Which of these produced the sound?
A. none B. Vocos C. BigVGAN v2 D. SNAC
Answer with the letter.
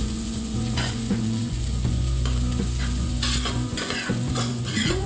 B